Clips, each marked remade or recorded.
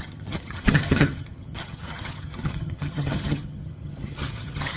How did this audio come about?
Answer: remade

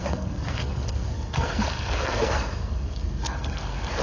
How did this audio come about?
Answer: remade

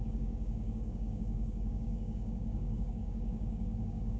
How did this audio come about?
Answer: remade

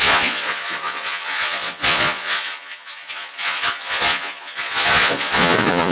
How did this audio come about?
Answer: remade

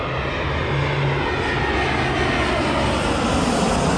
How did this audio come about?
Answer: recorded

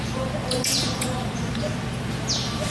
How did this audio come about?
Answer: recorded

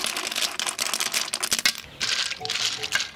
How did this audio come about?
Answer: recorded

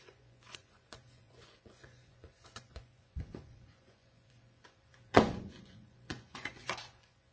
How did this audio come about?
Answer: remade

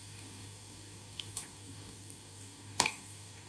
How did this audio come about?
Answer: remade